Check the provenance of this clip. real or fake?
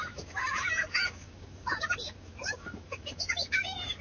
fake